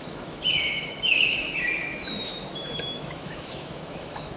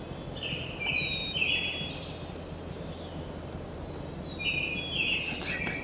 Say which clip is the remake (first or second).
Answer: first